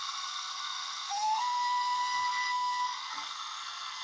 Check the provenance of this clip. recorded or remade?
remade